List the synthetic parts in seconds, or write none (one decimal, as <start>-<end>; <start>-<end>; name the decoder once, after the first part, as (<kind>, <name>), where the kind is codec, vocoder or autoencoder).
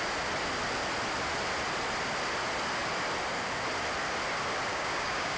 4.7-5.4 (codec, DAC)